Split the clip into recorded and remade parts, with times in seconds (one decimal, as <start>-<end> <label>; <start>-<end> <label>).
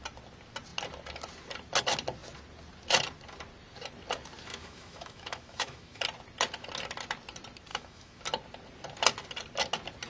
0.0-4.5 recorded; 4.5-6.0 remade; 6.0-7.7 recorded; 7.7-8.2 remade; 8.2-10.1 recorded